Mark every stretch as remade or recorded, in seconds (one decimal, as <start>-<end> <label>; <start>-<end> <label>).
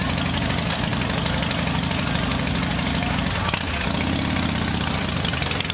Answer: 0.0-5.7 recorded